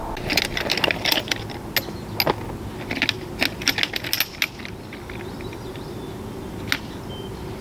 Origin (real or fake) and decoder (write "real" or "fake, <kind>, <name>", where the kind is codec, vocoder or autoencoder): real